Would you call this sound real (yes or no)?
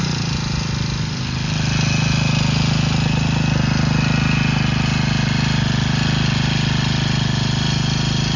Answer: yes